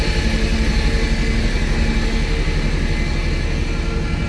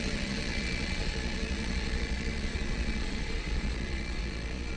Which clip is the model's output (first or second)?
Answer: second